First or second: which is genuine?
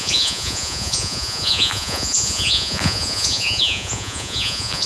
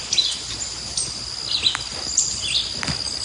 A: second